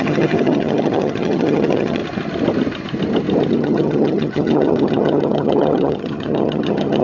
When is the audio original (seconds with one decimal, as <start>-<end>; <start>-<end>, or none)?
2.0-3.5